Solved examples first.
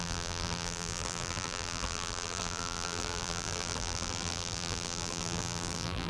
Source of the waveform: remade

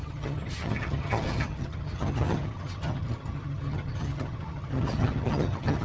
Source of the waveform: remade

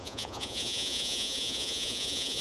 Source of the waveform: remade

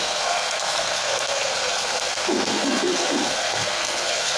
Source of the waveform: remade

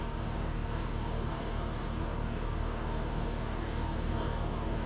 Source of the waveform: remade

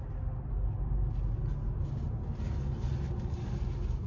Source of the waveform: recorded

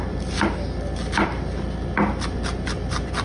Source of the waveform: recorded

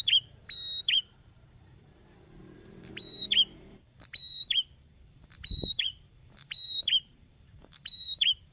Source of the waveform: remade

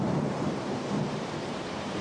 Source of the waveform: remade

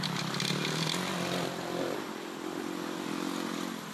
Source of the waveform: recorded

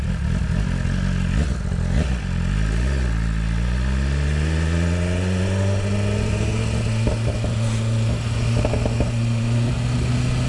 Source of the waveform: recorded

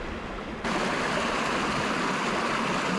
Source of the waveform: recorded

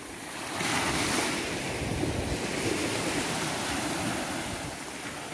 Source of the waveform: recorded